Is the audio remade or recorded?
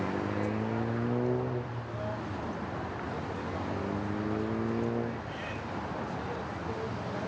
recorded